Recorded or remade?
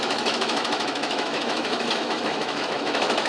remade